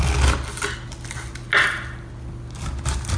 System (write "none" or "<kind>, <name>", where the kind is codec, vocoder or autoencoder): none